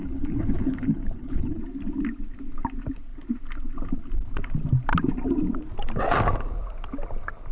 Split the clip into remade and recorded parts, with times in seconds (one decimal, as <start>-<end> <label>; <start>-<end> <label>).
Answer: 0.0-1.6 remade; 1.6-7.5 recorded